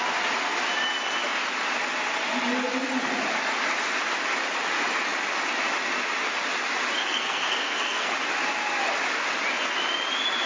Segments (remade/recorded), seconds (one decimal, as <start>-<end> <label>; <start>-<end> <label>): 0.0-7.0 recorded; 7.0-8.1 remade; 8.1-10.5 recorded